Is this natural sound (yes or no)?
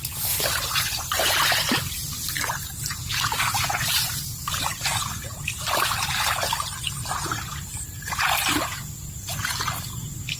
no